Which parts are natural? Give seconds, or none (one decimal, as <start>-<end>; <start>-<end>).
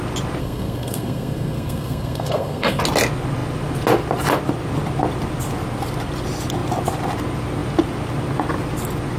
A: 0.0-0.4; 2.8-9.2